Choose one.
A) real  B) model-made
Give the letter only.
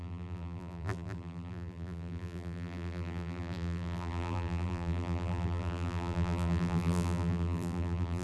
B